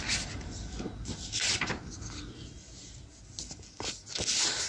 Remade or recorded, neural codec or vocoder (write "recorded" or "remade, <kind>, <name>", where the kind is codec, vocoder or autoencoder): recorded